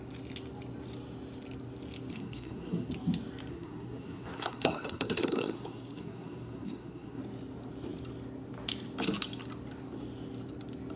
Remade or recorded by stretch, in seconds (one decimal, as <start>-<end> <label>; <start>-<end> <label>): 0.0-2.1 recorded; 2.1-2.9 remade; 2.9-3.5 recorded; 3.5-7.2 remade; 7.2-11.0 recorded